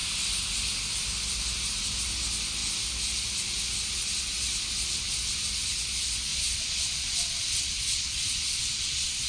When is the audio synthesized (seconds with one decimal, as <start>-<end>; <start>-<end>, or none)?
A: 6.3-9.3